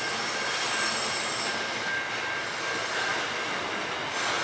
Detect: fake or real real